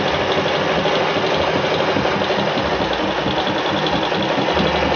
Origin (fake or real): real